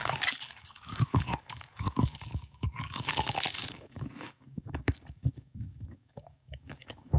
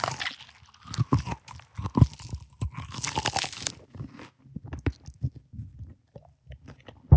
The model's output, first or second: first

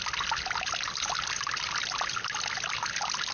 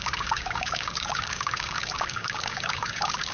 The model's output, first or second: second